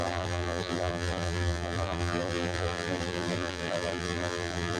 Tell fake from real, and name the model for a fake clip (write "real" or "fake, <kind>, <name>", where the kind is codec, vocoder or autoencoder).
fake, vocoder, BigVGAN v2